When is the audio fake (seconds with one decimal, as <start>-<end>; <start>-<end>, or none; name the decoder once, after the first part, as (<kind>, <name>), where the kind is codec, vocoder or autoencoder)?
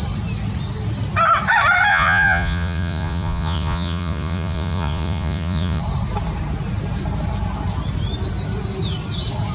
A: 1.9-5.8 (vocoder, Vocos)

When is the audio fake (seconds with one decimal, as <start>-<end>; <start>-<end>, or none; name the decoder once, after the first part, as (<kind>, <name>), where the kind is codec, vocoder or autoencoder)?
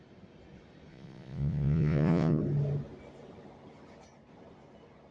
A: 0.9-2.4 (vocoder, Vocos)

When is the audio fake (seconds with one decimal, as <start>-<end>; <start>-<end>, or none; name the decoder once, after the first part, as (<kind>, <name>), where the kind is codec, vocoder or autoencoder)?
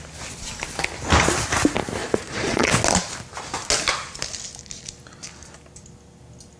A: 2.0-2.7 (vocoder, Vocos)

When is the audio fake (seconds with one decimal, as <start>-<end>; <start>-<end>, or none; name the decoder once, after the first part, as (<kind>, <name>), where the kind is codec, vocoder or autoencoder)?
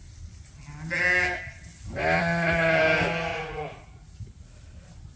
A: 3.3-4.2 (vocoder, Vocos)